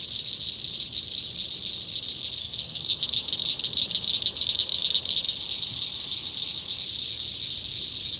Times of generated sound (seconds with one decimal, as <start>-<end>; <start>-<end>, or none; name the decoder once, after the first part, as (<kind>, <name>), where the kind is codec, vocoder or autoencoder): 2.4-3.0 (codec, SNAC)